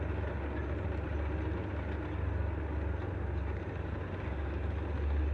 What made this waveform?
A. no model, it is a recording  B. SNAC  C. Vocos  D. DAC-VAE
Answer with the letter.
A